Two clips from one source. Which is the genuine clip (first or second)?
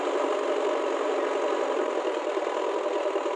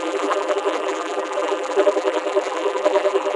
first